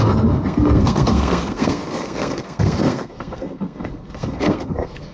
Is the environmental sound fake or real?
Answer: fake